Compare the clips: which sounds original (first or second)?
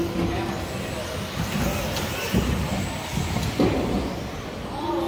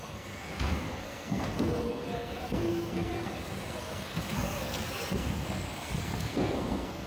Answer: first